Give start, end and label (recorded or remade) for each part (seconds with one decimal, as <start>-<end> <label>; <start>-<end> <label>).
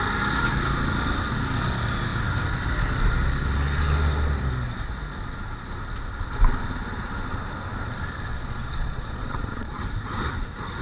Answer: 0.0-8.3 recorded; 8.3-9.8 remade; 9.8-10.8 recorded